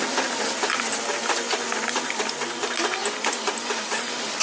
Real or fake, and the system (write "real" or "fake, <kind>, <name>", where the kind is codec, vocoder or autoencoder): real